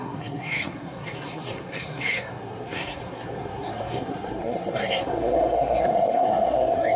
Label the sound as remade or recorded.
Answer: remade